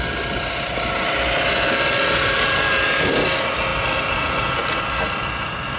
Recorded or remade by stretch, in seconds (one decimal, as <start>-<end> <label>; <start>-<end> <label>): 0.0-5.8 recorded